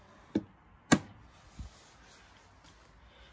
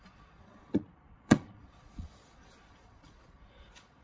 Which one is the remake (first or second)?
second